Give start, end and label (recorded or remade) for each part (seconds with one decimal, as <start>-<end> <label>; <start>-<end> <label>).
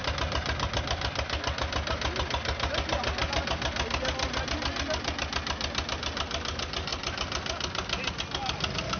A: 0.0-9.0 recorded